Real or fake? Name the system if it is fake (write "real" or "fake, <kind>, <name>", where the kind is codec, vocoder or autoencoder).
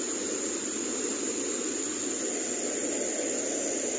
real